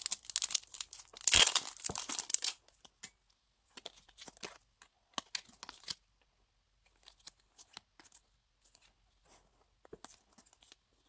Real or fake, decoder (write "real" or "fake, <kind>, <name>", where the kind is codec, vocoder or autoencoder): real